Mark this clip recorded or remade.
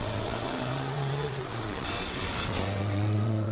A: remade